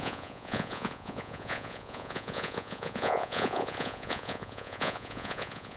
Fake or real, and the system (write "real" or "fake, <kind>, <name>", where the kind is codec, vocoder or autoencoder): fake, vocoder, Vocos